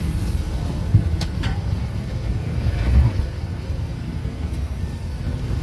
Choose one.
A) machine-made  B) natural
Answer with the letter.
A